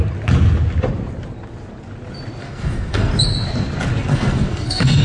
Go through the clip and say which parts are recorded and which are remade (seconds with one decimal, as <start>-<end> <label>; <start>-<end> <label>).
0.0-2.4 recorded; 2.4-3.1 remade; 3.1-4.1 recorded; 4.1-5.0 remade